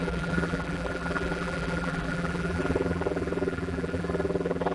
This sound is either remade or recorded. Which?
remade